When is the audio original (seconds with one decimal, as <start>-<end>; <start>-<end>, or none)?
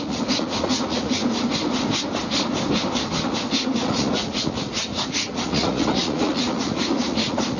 1.2-3.1